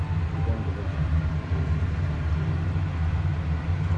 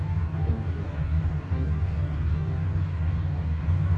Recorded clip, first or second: first